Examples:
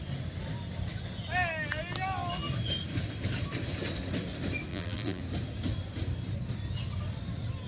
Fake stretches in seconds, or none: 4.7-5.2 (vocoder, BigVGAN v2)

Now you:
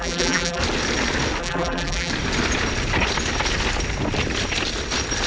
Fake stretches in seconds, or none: 0.0-0.6 (vocoder, BigVGAN v2); 1.4-2.1

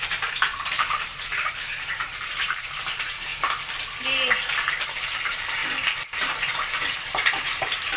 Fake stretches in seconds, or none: 0.0-3.3 (vocoder, BigVGAN v2); 4.7-5.6; 6.2-8.0

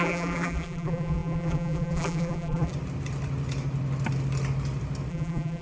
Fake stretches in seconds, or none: 0.0-2.7 (vocoder, BigVGAN v2); 5.1-5.6

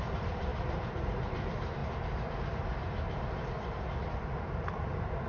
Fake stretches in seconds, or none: 0.0-1.8 (vocoder, BigVGAN v2); 4.6-5.3